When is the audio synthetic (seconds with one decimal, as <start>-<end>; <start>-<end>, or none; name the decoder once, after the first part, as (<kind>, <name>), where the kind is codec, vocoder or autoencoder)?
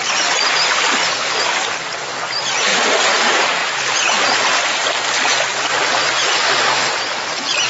2.7-3.2 (vocoder, BigVGAN v2)